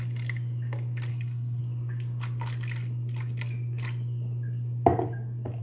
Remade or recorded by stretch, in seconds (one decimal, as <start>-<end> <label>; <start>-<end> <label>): 0.0-1.1 recorded; 1.1-1.6 remade; 1.6-5.6 recorded